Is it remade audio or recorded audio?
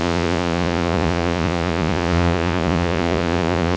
remade